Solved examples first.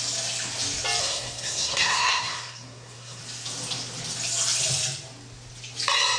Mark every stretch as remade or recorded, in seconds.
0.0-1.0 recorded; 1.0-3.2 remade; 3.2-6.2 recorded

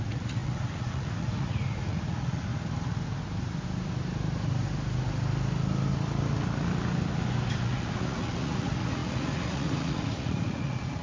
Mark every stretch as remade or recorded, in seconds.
0.0-2.5 remade; 2.5-7.6 recorded; 7.6-11.0 remade

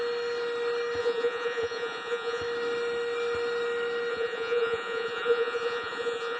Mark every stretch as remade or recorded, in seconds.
0.0-1.0 recorded; 1.0-2.4 remade; 2.4-4.1 recorded; 4.1-6.4 remade

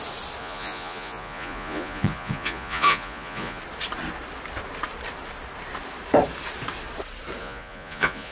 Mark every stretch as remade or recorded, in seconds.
0.0-0.4 recorded; 0.4-3.6 remade; 3.6-7.4 recorded; 7.4-8.3 remade